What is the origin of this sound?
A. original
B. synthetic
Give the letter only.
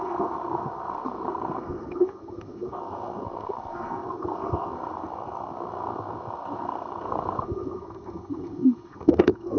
B